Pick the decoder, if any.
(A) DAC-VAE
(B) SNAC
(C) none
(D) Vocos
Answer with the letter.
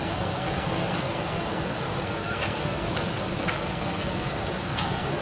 B